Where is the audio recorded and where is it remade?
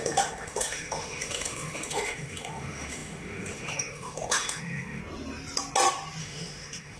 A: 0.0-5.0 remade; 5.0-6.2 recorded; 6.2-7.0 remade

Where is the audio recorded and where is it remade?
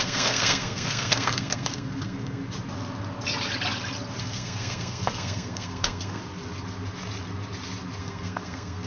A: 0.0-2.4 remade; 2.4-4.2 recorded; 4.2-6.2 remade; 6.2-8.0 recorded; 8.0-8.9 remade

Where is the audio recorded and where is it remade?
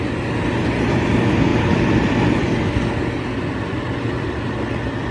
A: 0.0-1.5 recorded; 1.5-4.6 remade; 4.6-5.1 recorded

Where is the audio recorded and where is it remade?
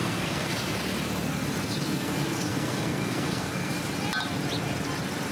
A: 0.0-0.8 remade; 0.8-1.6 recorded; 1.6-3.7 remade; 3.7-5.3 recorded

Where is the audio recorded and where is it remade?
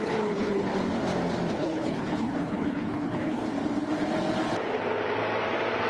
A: 0.0-0.7 remade; 0.7-1.5 recorded; 1.5-3.4 remade; 3.4-5.9 recorded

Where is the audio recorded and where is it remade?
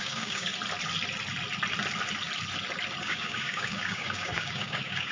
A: 0.0-0.5 remade; 0.5-3.0 recorded; 3.0-5.1 remade